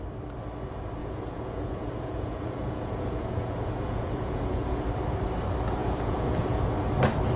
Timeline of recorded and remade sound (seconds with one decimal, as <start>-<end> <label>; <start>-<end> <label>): 0.0-1.0 recorded; 1.0-4.8 remade; 4.8-5.8 recorded; 5.8-6.6 remade; 6.6-7.4 recorded